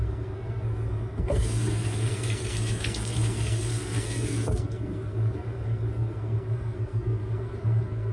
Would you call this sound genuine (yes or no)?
no